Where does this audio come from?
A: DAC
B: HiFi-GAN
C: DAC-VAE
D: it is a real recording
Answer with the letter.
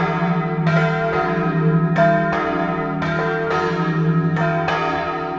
D